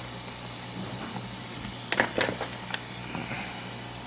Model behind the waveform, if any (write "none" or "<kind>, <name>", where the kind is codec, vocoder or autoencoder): none